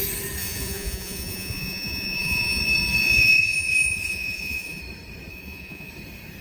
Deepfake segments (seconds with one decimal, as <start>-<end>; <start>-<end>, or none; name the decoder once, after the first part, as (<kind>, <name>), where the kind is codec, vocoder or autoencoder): 0.4-2.6 (vocoder, Vocos); 3.0-4.8; 5.3-5.9